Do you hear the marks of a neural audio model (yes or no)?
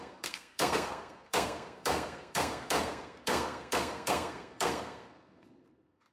yes